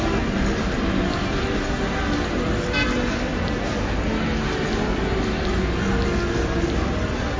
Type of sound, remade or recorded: recorded